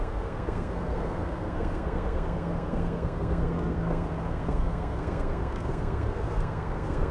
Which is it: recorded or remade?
remade